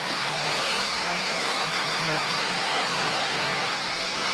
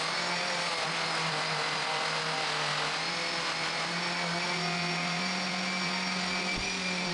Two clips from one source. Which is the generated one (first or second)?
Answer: first